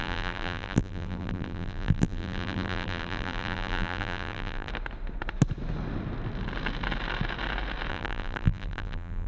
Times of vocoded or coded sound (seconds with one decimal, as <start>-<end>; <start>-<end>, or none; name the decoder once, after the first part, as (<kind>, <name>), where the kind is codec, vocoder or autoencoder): 0.0-4.7 (vocoder, BigVGAN v2); 7.9-9.3